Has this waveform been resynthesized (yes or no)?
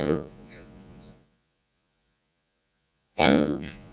yes